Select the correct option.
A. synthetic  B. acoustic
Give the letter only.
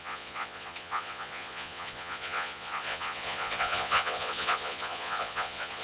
A